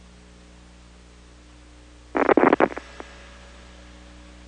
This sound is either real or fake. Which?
real